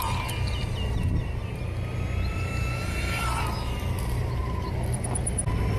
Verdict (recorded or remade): recorded